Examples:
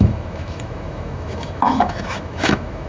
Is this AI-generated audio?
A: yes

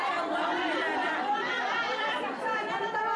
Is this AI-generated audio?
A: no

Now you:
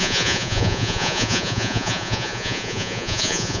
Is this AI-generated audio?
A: yes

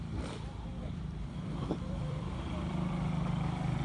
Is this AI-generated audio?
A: yes